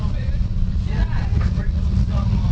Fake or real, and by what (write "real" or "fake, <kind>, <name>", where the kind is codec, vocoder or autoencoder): fake, vocoder, Vocos